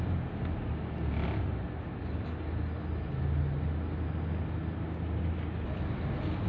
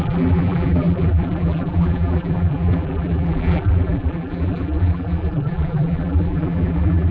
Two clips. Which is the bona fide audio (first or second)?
first